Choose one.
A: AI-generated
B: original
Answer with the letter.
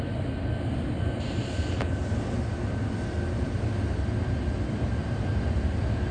B